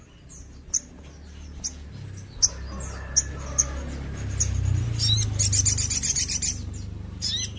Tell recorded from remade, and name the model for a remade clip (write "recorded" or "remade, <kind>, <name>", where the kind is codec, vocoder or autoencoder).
recorded